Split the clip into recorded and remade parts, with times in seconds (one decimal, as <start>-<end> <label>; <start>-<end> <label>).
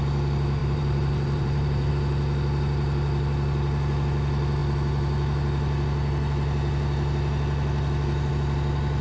0.0-0.6 recorded; 0.6-1.9 remade; 1.9-9.0 recorded